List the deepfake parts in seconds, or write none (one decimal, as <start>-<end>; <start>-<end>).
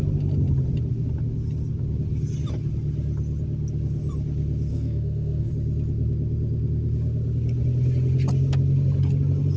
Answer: 4.7-5.5